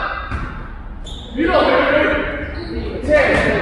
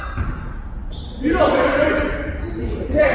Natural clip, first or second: first